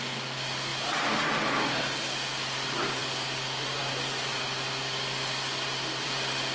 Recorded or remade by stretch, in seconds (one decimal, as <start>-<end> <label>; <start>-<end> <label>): 0.0-6.5 recorded